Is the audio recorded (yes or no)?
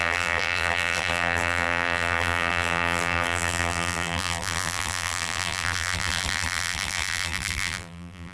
no